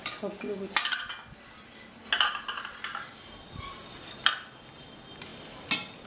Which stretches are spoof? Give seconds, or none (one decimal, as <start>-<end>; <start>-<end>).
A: none